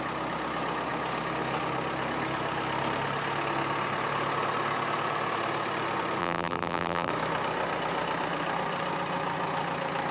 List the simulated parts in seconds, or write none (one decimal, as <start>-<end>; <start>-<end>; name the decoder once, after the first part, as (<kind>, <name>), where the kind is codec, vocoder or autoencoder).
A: 6.2-7.1 (vocoder, BigVGAN v2)